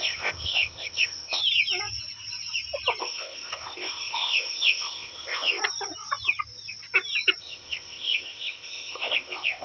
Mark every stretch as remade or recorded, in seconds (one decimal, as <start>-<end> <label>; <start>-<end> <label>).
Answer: 0.0-1.4 remade; 1.4-3.0 recorded; 3.0-5.6 remade; 5.6-7.4 recorded; 7.4-9.6 remade